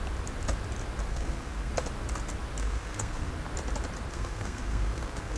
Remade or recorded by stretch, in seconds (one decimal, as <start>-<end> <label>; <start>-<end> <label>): 0.0-1.1 recorded; 1.1-1.7 remade; 1.7-2.6 recorded; 2.6-3.3 remade; 3.3-4.1 recorded; 4.1-5.4 remade